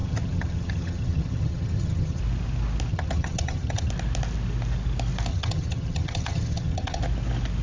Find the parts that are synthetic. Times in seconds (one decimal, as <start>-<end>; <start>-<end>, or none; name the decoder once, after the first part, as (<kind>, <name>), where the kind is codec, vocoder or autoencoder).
0.0-2.2 (vocoder, HiFi-GAN); 2.9-3.9; 5.3-7.0